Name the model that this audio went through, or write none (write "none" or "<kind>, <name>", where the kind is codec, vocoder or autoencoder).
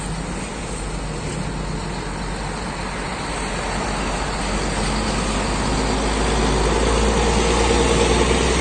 none